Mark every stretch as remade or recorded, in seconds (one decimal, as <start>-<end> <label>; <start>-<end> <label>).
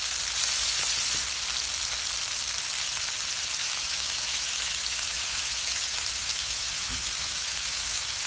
0.0-3.6 recorded; 3.6-8.3 remade